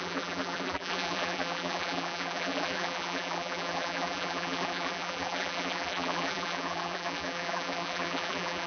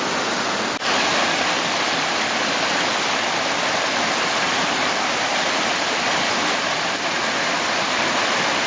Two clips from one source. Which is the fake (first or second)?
first